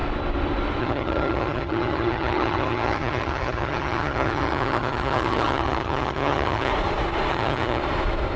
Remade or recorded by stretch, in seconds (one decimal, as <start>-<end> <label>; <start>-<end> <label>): 0.0-0.8 recorded; 0.8-6.7 remade; 6.7-7.3 recorded; 7.3-7.8 remade; 7.8-8.4 recorded